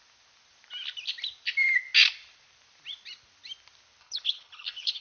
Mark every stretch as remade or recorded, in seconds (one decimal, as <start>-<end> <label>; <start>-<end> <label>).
0.0-4.0 recorded; 4.0-5.0 remade